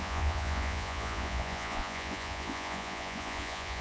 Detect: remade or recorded remade